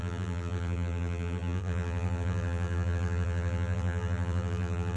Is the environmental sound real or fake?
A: fake